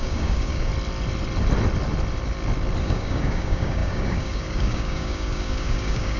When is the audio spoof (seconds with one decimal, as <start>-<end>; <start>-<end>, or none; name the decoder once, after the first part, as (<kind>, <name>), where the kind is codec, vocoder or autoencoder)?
0.0-0.7 (codec, DAC); 2.8-6.2